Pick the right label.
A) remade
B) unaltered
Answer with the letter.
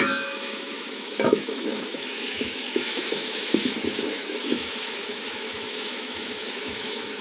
A